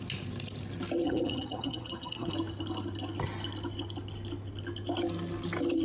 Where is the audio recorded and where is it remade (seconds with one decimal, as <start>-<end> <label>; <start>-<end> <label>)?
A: 0.0-1.0 recorded; 1.0-2.3 remade; 2.3-5.8 recorded